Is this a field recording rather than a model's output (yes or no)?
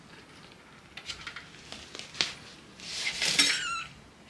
yes